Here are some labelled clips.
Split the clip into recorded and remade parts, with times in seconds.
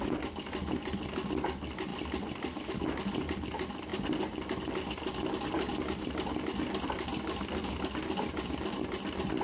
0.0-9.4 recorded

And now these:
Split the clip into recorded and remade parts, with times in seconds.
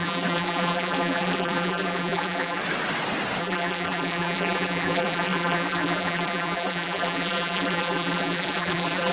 0.0-2.6 remade; 2.6-3.4 recorded; 3.4-9.1 remade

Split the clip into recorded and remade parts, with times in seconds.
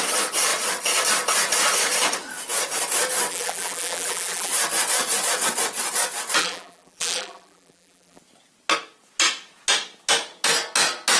0.0-3.3 recorded; 3.3-4.5 remade; 4.5-6.4 recorded; 6.4-8.2 remade; 8.2-11.2 recorded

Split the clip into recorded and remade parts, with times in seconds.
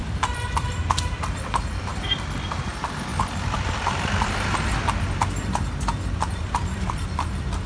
0.0-1.2 remade; 1.2-1.9 recorded; 1.9-2.5 remade; 2.5-3.1 recorded; 3.1-6.9 remade; 6.9-7.7 recorded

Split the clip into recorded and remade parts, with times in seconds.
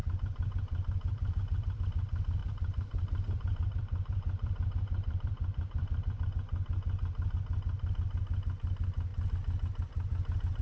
0.0-1.8 remade; 1.8-2.4 recorded; 2.4-6.2 remade; 6.2-10.6 recorded